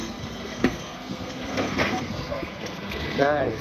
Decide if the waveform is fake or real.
fake